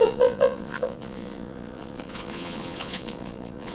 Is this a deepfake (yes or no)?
yes